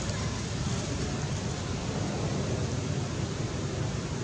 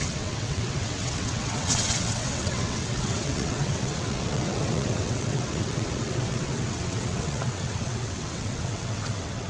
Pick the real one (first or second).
first